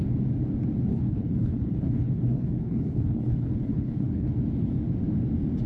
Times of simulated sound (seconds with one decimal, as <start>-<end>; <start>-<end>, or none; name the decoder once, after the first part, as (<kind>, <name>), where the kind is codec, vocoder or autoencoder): 0.9-4.3 (codec, HILCodec)